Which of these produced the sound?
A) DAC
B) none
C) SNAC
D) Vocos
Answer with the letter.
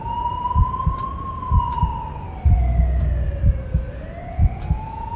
B